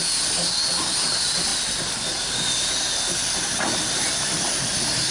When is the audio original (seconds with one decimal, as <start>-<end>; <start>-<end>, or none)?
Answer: 0.0-5.1